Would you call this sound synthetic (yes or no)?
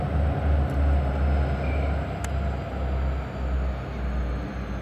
no